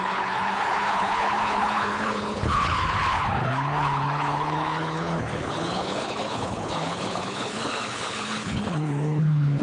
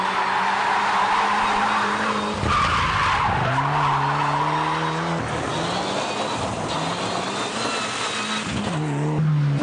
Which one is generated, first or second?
first